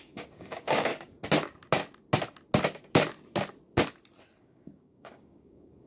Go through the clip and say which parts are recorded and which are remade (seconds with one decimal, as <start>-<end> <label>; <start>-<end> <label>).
0.0-0.9 remade; 0.9-4.4 recorded; 4.4-5.9 remade